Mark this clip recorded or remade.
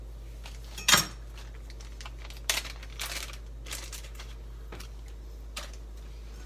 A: recorded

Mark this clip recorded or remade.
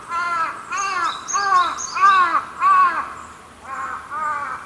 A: recorded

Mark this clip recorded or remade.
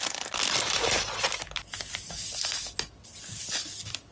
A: recorded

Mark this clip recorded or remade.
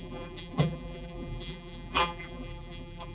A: remade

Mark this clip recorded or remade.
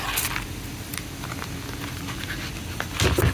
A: recorded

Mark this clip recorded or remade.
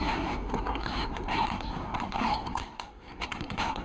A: remade